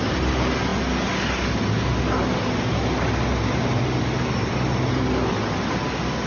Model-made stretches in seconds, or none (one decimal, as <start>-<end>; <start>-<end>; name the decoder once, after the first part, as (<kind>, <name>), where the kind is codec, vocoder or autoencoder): none